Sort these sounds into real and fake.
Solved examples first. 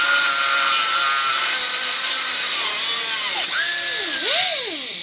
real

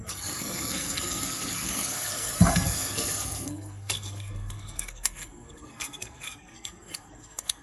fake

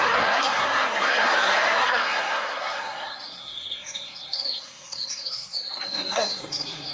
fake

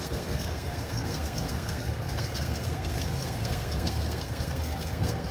fake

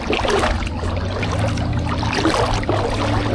real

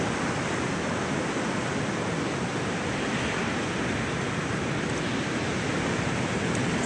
real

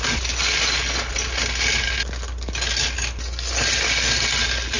real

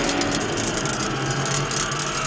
real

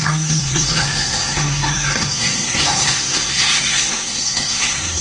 fake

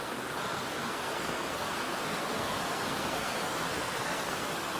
fake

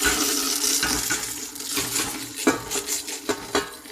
real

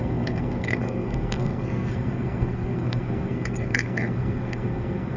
fake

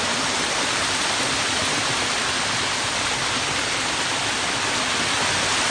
real